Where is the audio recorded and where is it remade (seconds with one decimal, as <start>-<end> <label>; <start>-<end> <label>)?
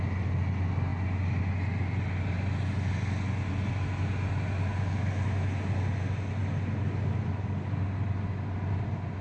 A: 0.0-9.2 recorded